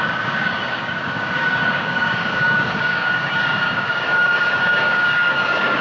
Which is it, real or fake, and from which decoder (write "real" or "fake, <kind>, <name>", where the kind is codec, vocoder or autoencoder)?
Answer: fake, codec, DAC